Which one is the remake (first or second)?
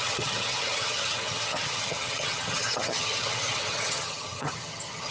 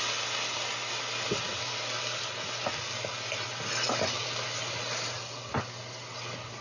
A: first